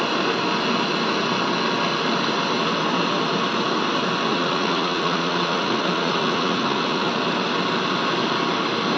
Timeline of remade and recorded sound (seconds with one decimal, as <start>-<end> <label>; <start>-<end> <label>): 0.0-4.3 recorded; 4.3-7.1 remade; 7.1-9.0 recorded